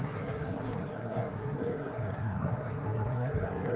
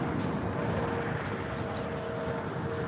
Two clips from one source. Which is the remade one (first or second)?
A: first